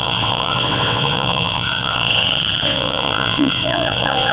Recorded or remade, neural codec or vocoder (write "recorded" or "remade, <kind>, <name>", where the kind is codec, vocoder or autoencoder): remade, vocoder, WaveNeXt